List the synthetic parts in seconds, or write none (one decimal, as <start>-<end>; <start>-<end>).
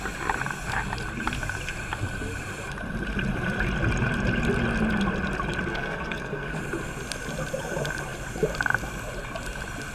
5.7-6.6